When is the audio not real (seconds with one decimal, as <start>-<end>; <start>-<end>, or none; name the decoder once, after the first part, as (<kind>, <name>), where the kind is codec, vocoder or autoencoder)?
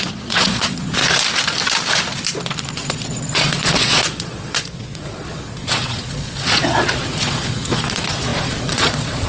0.0-1.0 (vocoder, Vocos); 2.7-9.3